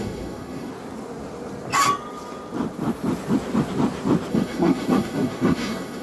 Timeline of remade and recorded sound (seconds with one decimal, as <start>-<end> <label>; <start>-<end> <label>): 0.0-0.7 remade; 0.7-4.3 recorded; 4.3-6.0 remade